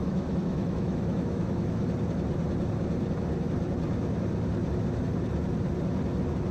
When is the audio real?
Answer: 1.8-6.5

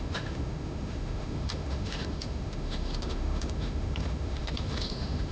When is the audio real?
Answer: none

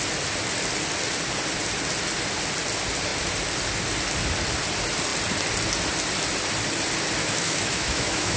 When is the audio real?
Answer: 0.0-7.2

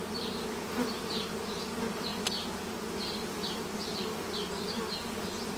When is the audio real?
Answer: 0.0-5.6